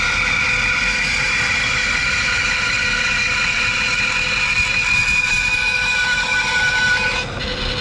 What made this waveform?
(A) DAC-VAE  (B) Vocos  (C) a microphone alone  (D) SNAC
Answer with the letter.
C